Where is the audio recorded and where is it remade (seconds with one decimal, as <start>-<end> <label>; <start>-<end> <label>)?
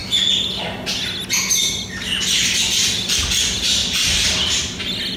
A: 0.0-5.2 recorded